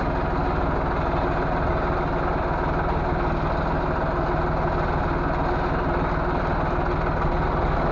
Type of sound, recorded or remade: recorded